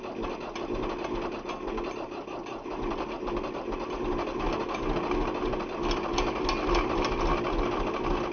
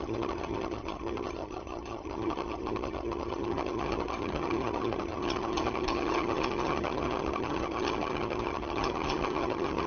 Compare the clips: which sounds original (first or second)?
first